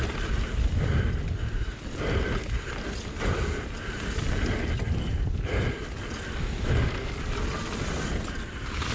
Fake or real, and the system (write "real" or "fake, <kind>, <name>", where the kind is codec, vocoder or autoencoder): real